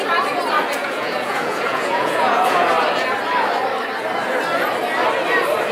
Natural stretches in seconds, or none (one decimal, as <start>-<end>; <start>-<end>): 0.0-0.8; 2.7-5.7